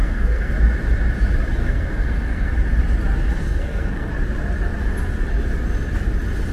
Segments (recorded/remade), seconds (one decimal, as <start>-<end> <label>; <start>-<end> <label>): 0.0-0.5 remade; 0.5-1.6 recorded; 1.6-2.5 remade; 2.5-3.4 recorded; 3.4-4.1 remade; 4.1-6.5 recorded